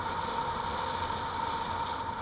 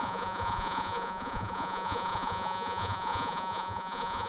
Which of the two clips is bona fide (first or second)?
first